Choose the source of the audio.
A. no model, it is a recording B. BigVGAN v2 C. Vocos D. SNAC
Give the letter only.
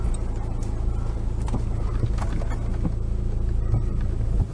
A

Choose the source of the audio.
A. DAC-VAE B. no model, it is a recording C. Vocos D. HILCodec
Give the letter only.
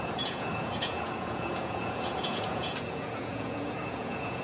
C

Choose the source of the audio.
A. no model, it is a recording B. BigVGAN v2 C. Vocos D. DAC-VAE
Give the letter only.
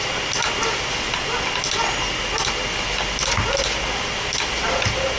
A